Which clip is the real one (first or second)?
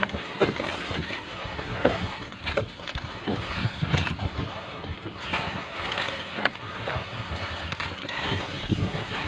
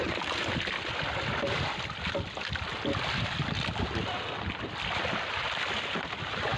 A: second